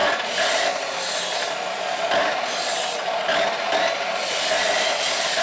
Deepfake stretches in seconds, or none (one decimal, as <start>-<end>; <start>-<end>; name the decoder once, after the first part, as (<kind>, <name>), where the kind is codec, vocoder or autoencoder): none